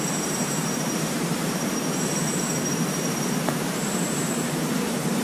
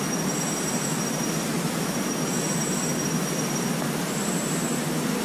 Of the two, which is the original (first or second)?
second